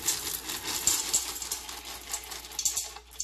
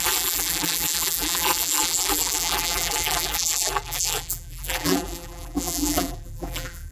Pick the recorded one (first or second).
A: first